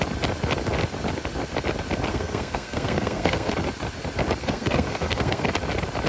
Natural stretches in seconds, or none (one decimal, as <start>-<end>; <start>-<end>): 0.0-2.1; 3.5-4.4; 5.5-6.1